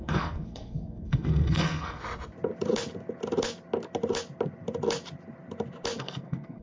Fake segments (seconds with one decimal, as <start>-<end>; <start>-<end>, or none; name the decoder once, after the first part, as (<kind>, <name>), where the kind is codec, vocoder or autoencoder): 0.0-2.0 (codec, SNAC); 6.0-6.6